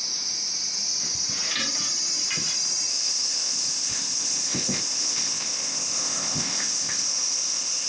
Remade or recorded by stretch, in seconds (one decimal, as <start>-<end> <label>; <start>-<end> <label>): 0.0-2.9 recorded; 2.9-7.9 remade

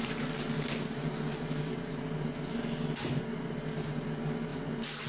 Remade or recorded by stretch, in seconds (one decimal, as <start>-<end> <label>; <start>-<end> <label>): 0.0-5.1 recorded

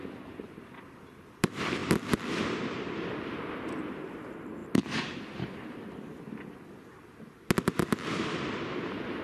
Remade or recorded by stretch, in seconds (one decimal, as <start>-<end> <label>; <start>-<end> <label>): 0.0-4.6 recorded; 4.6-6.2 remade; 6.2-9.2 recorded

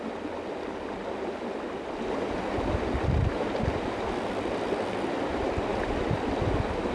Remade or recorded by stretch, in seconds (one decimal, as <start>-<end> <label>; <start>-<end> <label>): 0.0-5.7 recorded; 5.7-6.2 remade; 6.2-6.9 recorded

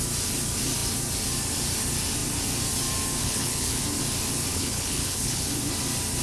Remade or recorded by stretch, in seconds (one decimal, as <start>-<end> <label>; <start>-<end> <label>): 0.0-3.2 recorded; 3.2-3.8 remade; 3.8-4.5 recorded; 4.5-5.5 remade; 5.5-6.2 recorded